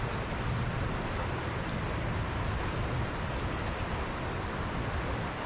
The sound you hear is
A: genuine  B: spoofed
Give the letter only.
A